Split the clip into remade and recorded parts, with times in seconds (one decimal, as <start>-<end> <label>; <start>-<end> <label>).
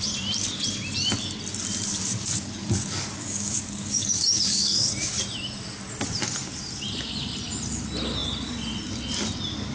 0.0-2.1 recorded; 2.1-4.9 remade; 4.9-9.7 recorded